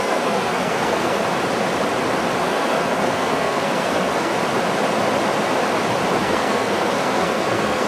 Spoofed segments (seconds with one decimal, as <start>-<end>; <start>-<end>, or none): 0.0-1.2; 2.4-4.3; 6.2-7.9